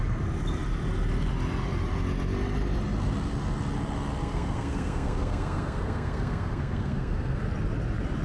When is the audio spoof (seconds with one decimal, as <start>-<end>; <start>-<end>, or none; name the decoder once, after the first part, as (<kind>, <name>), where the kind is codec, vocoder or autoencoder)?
4.2-7.4 (codec, SNAC)